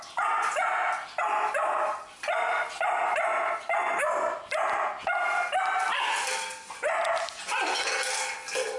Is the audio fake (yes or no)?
no